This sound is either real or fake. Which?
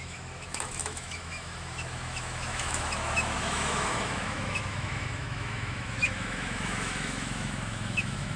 fake